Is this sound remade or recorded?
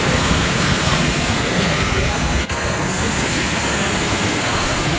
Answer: remade